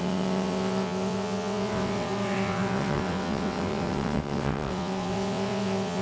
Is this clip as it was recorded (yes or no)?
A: no